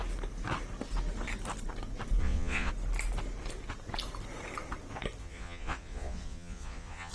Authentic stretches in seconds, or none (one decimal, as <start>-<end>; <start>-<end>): 0.0-2.2; 2.7-5.2